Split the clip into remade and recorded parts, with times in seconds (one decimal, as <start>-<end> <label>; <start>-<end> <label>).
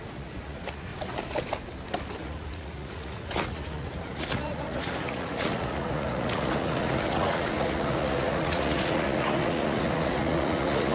0.0-0.9 remade; 0.9-2.2 recorded; 2.2-10.9 remade